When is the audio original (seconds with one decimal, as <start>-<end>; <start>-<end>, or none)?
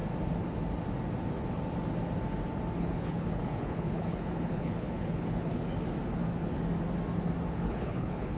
0.0-2.8; 5.6-7.5